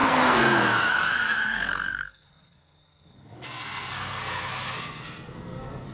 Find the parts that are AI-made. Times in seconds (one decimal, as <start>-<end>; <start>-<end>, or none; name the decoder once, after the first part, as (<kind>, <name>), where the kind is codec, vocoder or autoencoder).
0.0-5.9 (codec, SNAC)